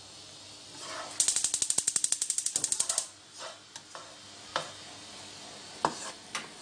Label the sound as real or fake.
real